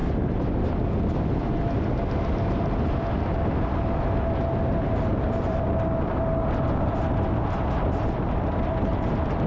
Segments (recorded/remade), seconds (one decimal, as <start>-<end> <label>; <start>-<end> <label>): 0.0-9.5 recorded